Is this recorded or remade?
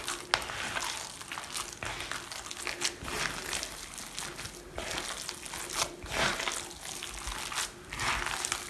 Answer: recorded